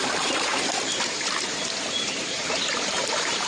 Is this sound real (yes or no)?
no